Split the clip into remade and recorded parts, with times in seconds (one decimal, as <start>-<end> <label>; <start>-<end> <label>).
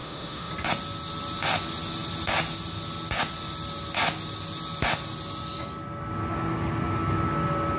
0.0-0.5 remade; 0.5-7.8 recorded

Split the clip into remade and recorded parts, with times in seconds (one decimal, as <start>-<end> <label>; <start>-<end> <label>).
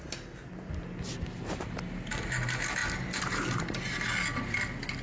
0.0-5.0 recorded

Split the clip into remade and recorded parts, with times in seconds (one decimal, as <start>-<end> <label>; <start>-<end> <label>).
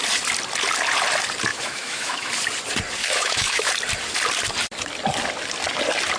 0.0-1.5 recorded; 1.5-2.3 remade; 2.3-3.0 recorded; 3.0-3.7 remade; 3.7-6.2 recorded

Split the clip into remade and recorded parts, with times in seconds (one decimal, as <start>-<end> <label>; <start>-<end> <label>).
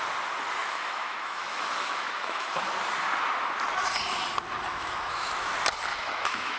0.0-0.6 recorded; 0.6-2.6 remade; 2.6-4.7 recorded; 4.7-5.5 remade; 5.5-5.9 recorded; 5.9-6.6 remade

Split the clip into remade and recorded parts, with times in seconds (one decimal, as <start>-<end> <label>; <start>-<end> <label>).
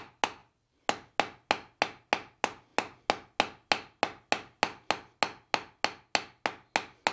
0.0-7.1 recorded